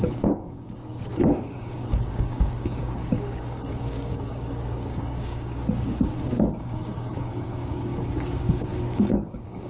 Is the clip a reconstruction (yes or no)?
yes